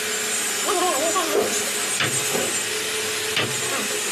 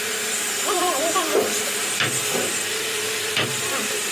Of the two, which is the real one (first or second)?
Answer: first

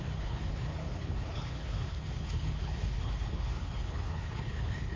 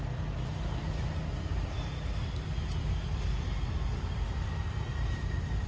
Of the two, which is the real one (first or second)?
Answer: second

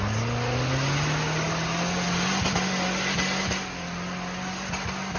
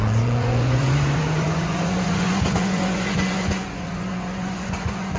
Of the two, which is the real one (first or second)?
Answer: first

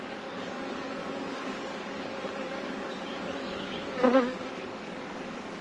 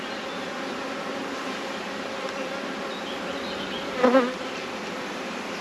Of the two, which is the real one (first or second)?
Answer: second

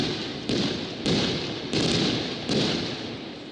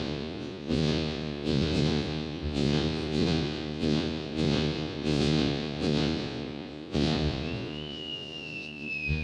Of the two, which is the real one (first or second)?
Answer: first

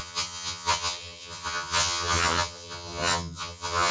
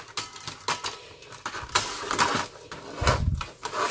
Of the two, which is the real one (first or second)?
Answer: second